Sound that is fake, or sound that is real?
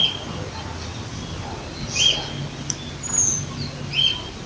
real